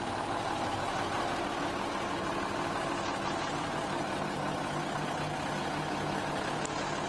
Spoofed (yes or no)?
no